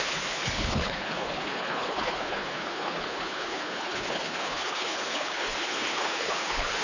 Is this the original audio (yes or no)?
no